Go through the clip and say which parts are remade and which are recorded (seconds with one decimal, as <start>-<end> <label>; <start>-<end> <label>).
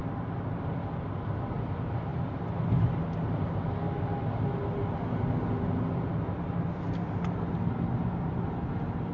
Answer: 0.0-9.1 recorded